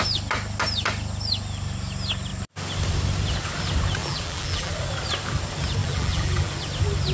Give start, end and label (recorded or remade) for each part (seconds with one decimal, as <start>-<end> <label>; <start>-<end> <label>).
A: 0.0-4.0 recorded; 4.0-4.7 remade; 4.7-5.8 recorded; 5.8-6.5 remade; 6.5-7.1 recorded